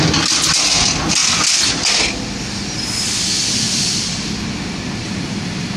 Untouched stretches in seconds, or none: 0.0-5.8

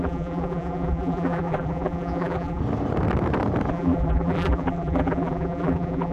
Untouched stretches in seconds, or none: 2.6-3.7

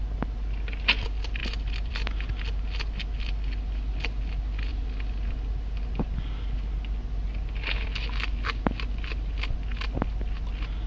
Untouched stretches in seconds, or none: 0.0-10.9

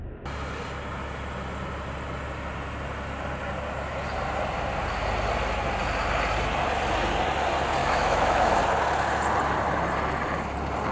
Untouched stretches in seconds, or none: 0.0-7.8; 8.6-10.9

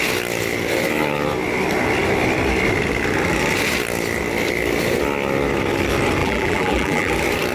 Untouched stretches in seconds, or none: 0.0-6.2; 7.1-7.5